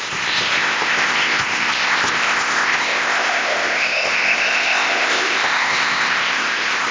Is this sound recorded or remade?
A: remade